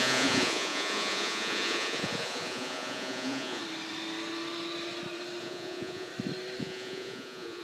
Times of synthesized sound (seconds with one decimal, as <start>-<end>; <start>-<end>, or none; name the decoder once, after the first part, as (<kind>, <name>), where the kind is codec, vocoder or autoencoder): 0.0-3.6 (vocoder, Vocos); 5.4-6.1; 6.6-7.6